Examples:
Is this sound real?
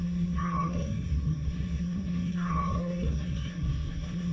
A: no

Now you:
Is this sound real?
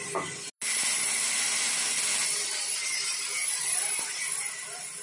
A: yes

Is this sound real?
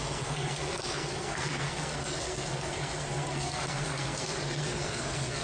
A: no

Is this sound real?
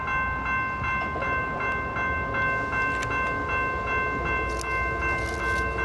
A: yes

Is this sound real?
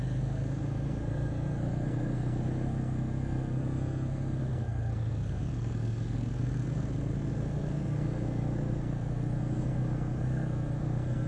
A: no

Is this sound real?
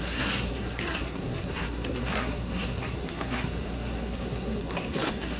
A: no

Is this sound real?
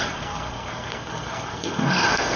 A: no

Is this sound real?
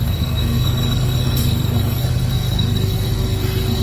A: no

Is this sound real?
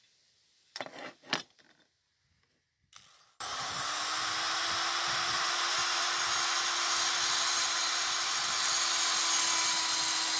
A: yes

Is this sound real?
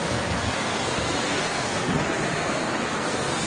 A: no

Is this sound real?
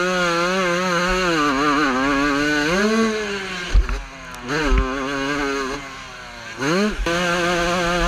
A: yes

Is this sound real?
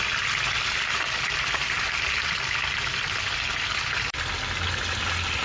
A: yes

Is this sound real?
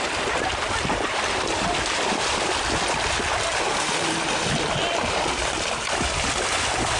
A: yes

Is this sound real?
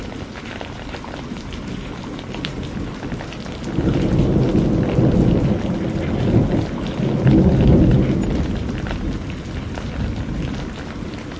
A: yes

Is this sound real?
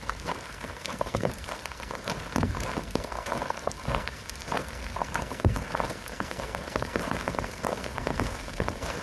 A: no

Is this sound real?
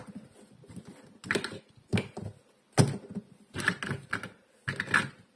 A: yes